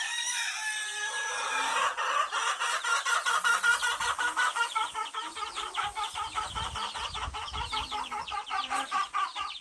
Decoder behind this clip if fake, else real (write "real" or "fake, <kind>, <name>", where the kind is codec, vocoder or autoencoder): fake, vocoder, BigVGAN v2